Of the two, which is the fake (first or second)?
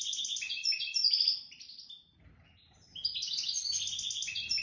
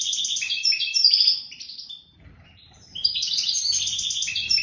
second